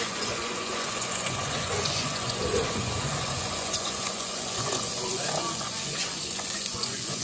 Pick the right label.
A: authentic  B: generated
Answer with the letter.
B